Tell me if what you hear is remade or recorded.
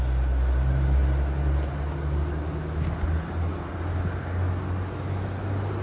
recorded